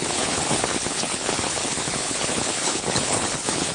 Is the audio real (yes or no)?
no